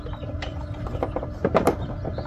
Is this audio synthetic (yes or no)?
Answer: no